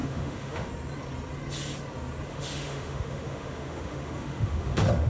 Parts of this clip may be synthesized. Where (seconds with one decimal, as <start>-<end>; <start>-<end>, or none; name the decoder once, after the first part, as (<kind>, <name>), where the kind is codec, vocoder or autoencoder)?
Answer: 0.0-0.7 (autoencoder, DAC-VAE); 2.3-5.1